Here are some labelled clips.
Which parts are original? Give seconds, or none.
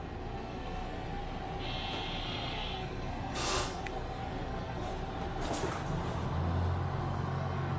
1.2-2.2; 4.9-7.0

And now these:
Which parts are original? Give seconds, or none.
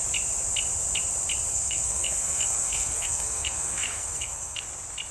0.0-1.5; 4.6-5.1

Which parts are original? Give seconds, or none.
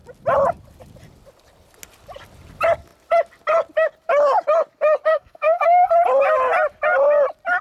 0.0-5.1; 5.9-7.6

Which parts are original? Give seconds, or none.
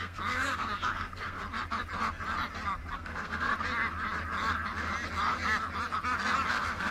1.4-2.9; 3.5-6.5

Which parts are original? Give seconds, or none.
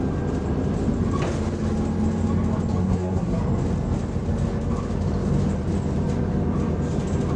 0.0-2.8; 3.4-7.4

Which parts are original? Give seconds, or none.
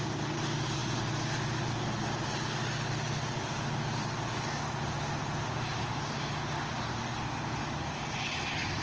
0.0-8.8